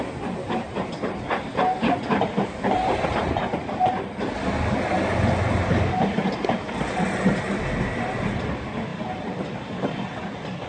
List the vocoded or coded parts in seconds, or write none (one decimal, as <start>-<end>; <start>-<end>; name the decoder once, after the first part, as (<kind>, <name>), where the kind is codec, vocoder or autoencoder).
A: none